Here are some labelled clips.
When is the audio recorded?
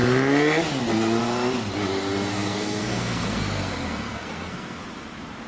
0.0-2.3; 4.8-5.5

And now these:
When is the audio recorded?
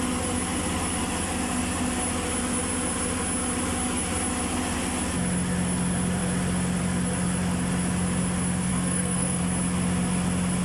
0.0-8.7; 9.4-10.6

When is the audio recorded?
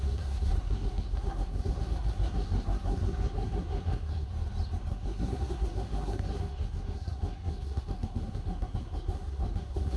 4.3-4.9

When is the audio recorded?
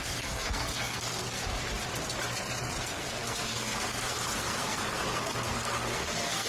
1.4-2.8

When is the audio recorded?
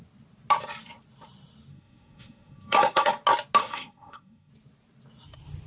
0.0-1.7; 3.1-3.6; 4.5-5.7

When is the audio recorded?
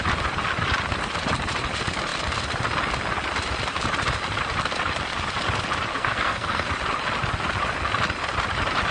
0.0-5.9; 6.7-8.9